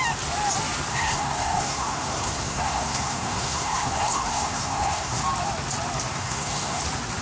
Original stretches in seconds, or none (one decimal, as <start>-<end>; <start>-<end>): 0.0-0.9; 5.2-6.1; 6.8-7.2